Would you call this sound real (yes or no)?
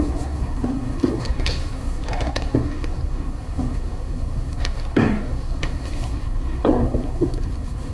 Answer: no